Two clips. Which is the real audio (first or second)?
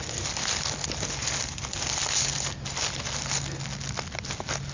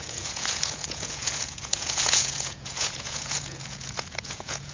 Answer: first